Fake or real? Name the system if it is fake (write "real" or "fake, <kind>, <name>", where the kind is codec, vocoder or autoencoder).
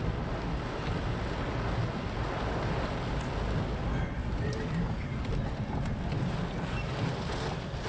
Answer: real